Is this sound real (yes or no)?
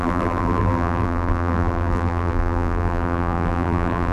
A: no